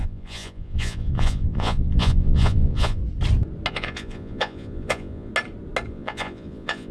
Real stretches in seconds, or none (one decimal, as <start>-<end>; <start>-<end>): 3.0-3.7; 5.3-5.9